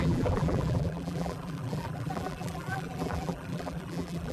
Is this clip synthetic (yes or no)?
yes